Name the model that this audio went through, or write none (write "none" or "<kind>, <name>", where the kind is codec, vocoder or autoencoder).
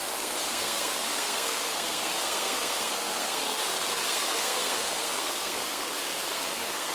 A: codec, SNAC